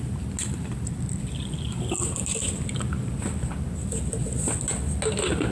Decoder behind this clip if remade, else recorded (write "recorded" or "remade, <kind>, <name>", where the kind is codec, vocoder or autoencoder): recorded